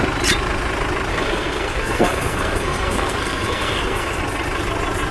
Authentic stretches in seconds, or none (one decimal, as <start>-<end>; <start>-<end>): 0.0-1.1; 4.2-5.1